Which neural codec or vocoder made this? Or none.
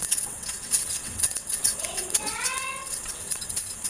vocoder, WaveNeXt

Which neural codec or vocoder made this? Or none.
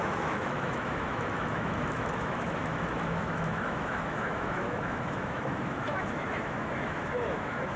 autoencoder, DAC-VAE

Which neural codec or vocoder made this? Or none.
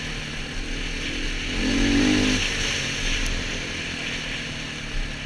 none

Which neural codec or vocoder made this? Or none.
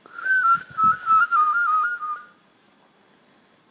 none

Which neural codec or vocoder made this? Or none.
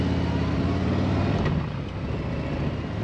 none